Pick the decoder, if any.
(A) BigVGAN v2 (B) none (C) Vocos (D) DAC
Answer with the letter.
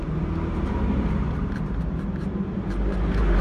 A